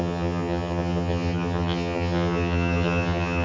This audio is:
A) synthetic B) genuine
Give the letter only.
A